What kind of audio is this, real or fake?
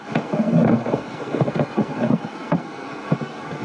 fake